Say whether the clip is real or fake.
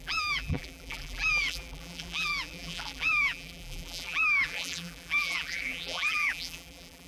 fake